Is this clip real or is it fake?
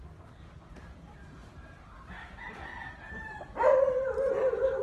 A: real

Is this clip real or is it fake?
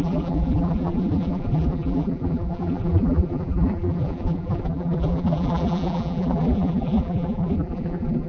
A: fake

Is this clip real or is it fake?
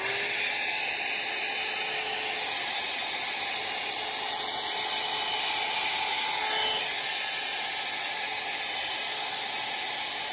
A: real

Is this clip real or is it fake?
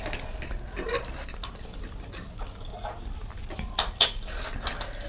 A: real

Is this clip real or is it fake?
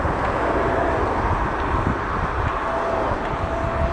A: real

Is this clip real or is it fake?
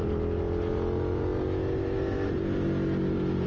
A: real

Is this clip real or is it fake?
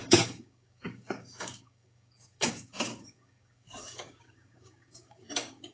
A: fake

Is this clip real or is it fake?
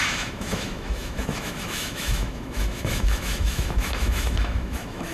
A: fake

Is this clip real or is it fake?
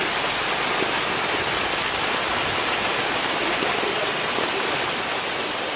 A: real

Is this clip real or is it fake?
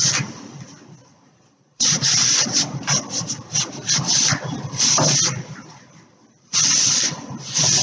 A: fake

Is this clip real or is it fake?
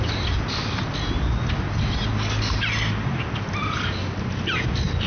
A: real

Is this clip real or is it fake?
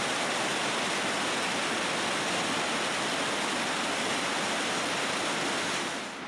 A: real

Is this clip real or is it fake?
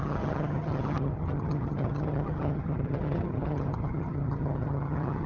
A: fake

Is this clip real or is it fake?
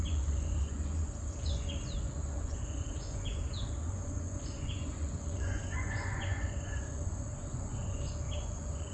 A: fake